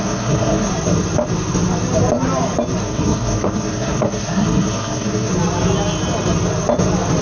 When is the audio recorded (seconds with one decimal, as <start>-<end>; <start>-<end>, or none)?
0.7-2.8; 5.3-7.2